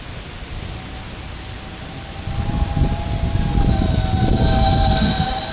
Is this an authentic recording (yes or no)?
no